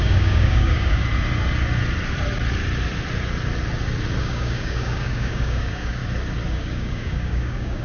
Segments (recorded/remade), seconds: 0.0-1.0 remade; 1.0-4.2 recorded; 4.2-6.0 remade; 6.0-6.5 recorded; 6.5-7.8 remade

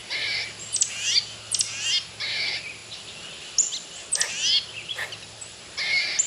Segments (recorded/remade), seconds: 0.0-6.3 recorded

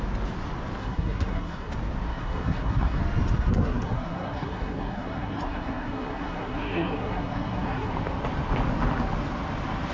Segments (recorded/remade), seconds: 0.0-0.8 recorded; 0.8-1.7 remade; 1.7-2.1 recorded; 2.1-3.0 remade; 3.0-3.5 recorded; 3.5-7.9 remade; 7.9-9.9 recorded

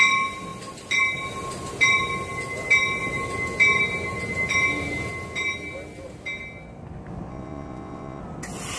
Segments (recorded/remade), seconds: 0.0-7.3 recorded; 7.3-8.2 remade; 8.2-8.8 recorded

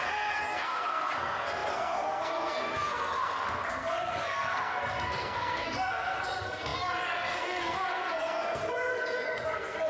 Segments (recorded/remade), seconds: 0.0-9.9 remade

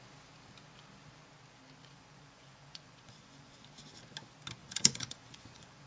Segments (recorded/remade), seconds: 0.0-1.8 recorded; 1.8-3.6 remade; 3.6-4.6 recorded; 4.6-5.9 remade

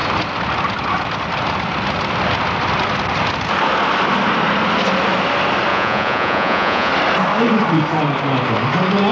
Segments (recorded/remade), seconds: 0.0-5.7 recorded; 5.7-6.9 remade; 6.9-9.1 recorded